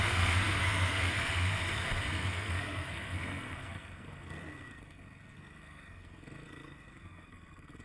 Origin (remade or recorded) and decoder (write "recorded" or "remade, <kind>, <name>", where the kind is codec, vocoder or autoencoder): remade, codec, SNAC